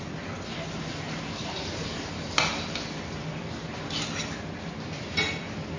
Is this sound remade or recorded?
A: recorded